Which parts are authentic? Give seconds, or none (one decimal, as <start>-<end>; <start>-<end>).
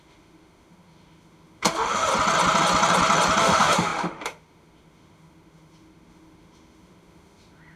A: 2.1-3.4